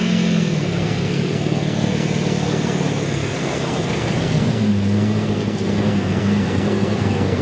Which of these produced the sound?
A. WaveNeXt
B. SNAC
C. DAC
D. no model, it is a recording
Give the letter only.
B